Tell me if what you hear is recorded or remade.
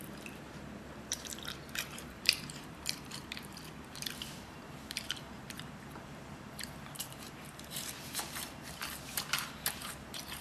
remade